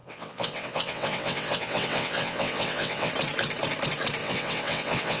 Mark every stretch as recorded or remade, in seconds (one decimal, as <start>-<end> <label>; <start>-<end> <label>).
0.0-3.1 remade; 3.1-4.2 recorded; 4.2-5.2 remade